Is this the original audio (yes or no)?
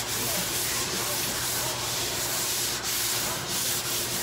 no